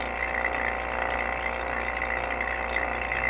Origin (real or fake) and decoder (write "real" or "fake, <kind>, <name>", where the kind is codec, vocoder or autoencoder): real